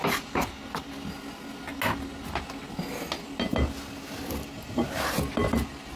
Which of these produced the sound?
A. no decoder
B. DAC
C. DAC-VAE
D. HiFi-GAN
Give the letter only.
A